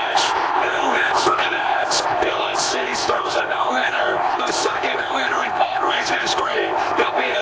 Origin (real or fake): fake